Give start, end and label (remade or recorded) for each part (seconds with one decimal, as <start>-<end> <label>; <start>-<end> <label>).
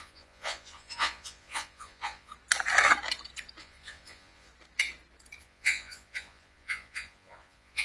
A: 0.0-2.3 remade; 2.3-3.6 recorded; 3.6-4.5 remade; 4.5-5.4 recorded; 5.4-7.8 remade